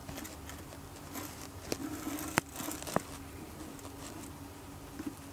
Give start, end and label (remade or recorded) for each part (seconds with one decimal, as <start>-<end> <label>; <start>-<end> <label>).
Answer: 0.0-5.3 recorded